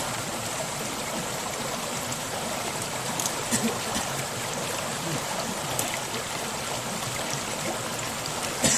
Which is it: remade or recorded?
recorded